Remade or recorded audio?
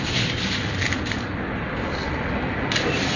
recorded